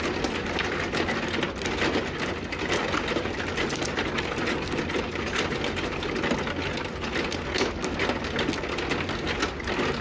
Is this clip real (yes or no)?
yes